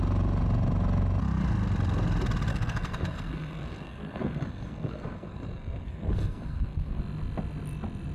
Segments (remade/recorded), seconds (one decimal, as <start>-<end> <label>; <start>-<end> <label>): 0.0-2.5 recorded; 2.5-7.0 remade; 7.0-8.1 recorded